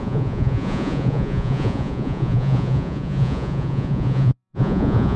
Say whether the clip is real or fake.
fake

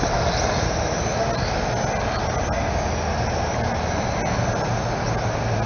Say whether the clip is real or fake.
real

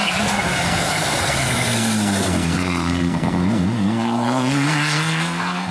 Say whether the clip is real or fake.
fake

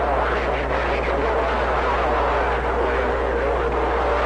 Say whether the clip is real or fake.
real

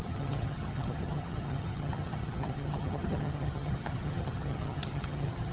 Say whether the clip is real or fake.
fake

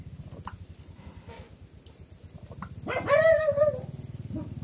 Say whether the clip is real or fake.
real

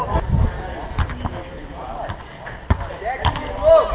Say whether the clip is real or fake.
real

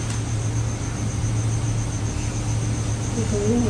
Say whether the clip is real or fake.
real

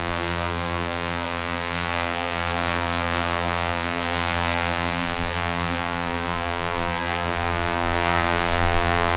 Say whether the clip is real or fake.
fake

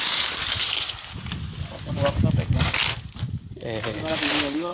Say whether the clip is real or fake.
real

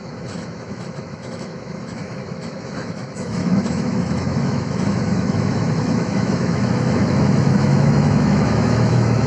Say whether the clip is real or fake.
fake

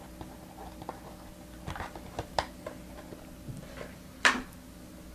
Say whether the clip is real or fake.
real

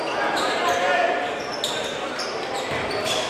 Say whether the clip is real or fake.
real